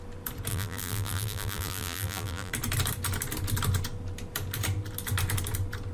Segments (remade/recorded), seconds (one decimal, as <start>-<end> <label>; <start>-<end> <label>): 0.0-0.5 recorded; 0.5-2.5 remade; 2.5-5.9 recorded